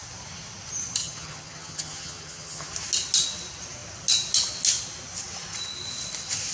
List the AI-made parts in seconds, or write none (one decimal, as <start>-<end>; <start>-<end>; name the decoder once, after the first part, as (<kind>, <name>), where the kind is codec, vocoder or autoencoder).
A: 1.0-2.7 (vocoder, HiFi-GAN)